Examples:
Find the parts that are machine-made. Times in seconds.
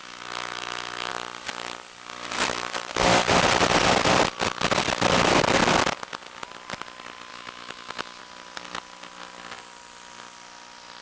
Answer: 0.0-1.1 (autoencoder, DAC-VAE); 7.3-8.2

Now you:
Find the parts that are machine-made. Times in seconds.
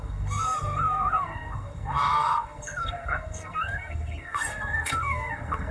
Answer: 0.0-5.7 (codec, SNAC)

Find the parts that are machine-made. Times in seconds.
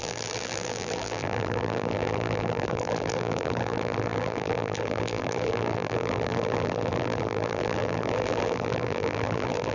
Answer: 0.0-9.7 (vocoder, BigVGAN v2)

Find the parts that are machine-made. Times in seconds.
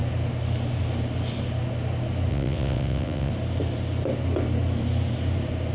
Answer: 2.3-3.3 (vocoder, WaveNeXt)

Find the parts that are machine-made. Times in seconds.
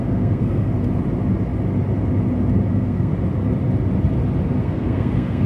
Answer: 0.0-0.7 (codec, SNAC); 2.7-3.1; 4.6-5.5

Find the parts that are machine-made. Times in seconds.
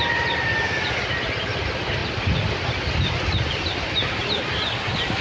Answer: none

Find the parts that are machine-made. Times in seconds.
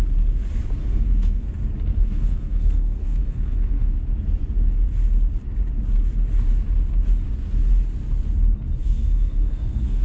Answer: 0.8-1.5 (codec, SNAC); 1.9-3.9; 8.8-10.0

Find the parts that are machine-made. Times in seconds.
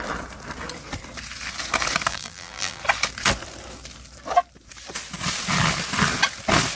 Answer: 2.1-2.8 (vocoder, BigVGAN v2)